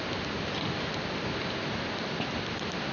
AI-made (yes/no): no